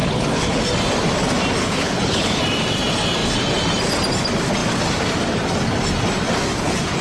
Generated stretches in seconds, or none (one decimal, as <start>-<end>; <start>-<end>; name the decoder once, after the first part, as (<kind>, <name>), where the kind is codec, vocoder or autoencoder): 0.0-0.6 (codec, HILCodec); 1.6-2.4